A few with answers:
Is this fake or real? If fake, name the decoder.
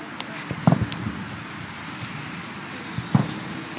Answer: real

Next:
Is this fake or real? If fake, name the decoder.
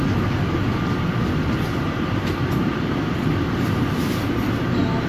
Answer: real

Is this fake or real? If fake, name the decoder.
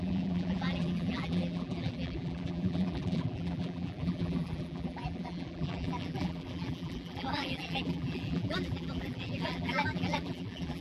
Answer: fake, vocoder, BigVGAN v2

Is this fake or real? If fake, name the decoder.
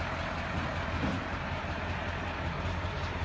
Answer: fake, vocoder, BigVGAN v2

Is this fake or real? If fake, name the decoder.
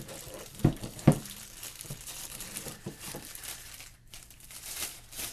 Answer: fake, vocoder, BigVGAN v2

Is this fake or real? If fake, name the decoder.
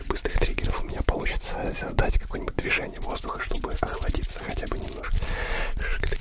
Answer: real